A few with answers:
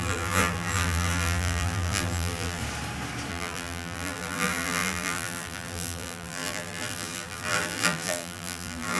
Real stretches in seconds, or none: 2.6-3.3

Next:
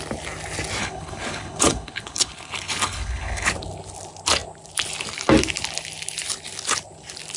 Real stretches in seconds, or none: 0.0-0.8; 3.5-7.4

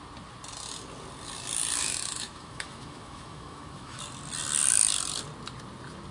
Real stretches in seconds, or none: 0.0-1.8; 4.0-6.1

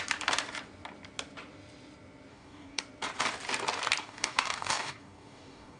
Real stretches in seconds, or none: 0.0-2.3; 2.8-4.0